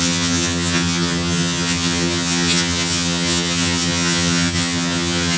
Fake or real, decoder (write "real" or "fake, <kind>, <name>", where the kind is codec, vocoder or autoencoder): fake, vocoder, HiFi-GAN